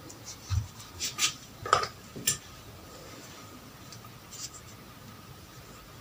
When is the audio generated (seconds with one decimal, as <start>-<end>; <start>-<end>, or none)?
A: none